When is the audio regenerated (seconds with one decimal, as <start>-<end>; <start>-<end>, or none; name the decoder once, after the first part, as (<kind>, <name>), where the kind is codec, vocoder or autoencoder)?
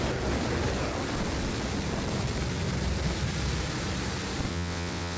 4.5-5.2 (vocoder, WaveNeXt)